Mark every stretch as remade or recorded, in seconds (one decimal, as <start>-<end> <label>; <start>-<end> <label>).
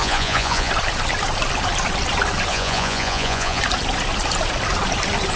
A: 0.0-0.7 remade; 0.7-2.5 recorded; 2.5-3.6 remade; 3.6-5.4 recorded